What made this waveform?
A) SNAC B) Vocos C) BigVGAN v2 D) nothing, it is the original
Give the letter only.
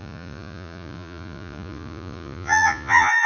B